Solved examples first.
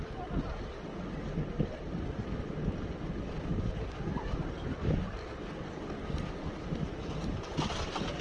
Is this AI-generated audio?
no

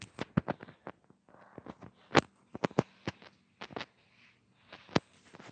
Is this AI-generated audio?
no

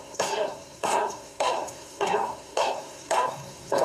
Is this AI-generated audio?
yes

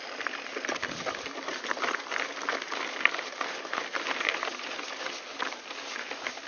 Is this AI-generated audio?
no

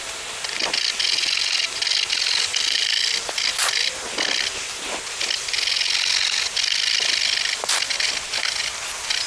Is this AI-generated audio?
no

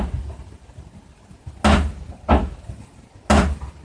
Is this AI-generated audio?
no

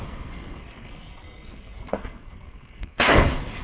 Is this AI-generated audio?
yes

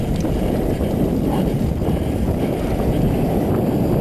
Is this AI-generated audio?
no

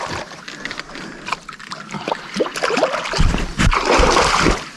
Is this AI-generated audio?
no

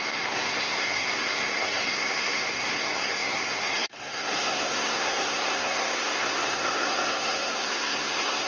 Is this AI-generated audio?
yes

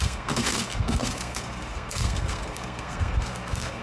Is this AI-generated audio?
yes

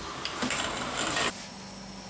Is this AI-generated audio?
no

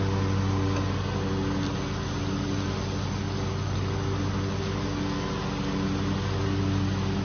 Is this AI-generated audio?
no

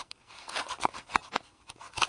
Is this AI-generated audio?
yes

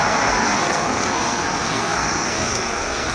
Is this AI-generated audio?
yes